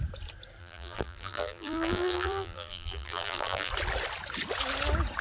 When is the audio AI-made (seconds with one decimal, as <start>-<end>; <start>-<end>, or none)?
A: 0.6-3.7